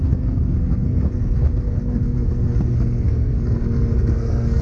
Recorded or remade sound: remade